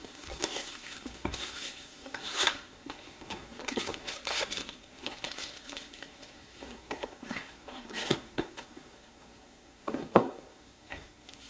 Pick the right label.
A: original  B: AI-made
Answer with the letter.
B